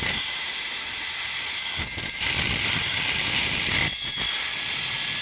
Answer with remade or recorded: recorded